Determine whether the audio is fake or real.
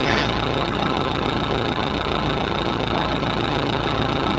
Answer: fake